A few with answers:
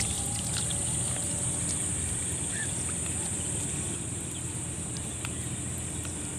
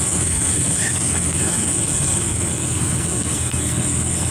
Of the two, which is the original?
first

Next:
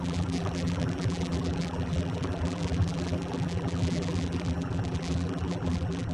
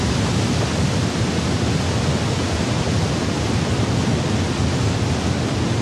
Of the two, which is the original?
second